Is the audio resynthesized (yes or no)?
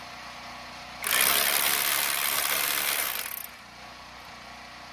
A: no